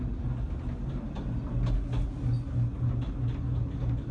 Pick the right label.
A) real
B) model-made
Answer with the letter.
A